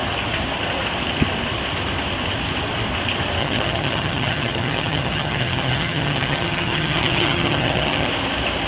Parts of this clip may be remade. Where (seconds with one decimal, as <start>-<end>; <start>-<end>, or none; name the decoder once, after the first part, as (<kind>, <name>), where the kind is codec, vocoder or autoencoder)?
3.4-8.1 (vocoder, HiFi-GAN)